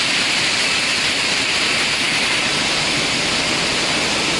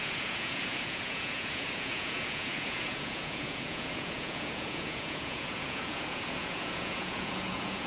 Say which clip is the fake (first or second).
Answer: second